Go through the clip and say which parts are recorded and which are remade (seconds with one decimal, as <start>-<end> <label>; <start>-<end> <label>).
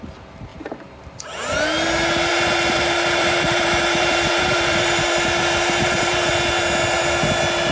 0.0-0.5 recorded; 0.5-1.2 remade; 1.2-2.3 recorded; 2.3-6.3 remade; 6.3-7.7 recorded